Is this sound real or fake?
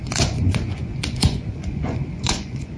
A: fake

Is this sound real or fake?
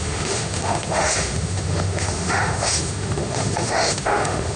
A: fake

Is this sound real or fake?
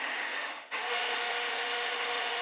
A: fake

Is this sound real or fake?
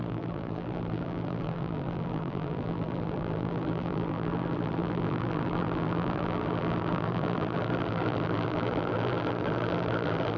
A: fake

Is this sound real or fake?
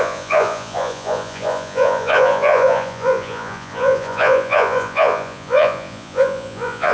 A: fake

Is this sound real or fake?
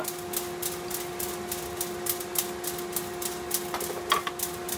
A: real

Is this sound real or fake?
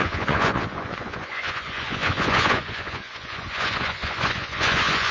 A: fake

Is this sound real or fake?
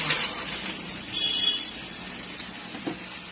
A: real